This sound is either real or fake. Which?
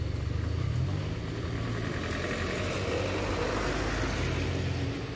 real